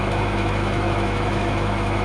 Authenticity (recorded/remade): remade